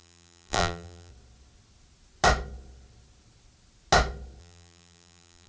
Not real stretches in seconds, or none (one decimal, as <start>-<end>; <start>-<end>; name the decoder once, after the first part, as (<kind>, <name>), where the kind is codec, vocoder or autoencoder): 0.0-1.1 (vocoder, BigVGAN v2); 4.4-5.5